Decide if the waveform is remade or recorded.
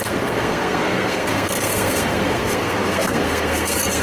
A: remade